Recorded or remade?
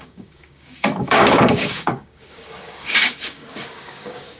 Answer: remade